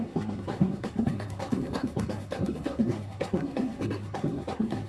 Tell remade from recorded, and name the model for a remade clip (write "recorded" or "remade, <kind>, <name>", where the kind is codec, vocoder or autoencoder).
remade, codec, SNAC